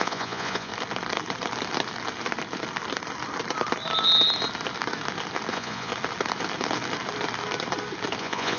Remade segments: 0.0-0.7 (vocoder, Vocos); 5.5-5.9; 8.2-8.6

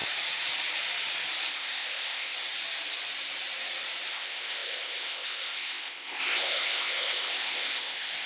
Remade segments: 1.5-2.3 (codec, ZipCodec); 4.1-8.3

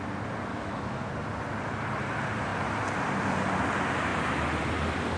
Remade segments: 0.5-1.1 (autoencoder, DAC-VAE)

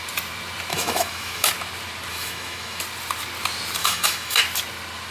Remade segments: 0.7-1.5 (autoencoder, DAC-VAE); 2.1-2.8; 3.8-4.4

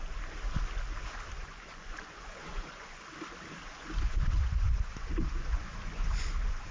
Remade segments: 1.4-3.0 (vocoder, Vocos); 3.7-6.7

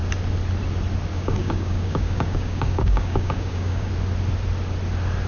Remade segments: 1.1-3.9 (codec, DAC)

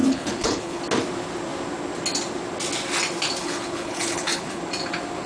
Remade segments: 0.0-0.8 (codec, HILCodec); 3.4-4.6

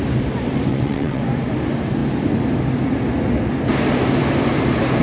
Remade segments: 0.7-1.2 (vocoder, WaveNeXt)